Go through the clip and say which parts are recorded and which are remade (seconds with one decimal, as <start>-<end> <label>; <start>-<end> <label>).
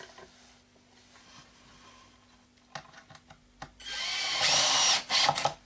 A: 0.0-5.6 recorded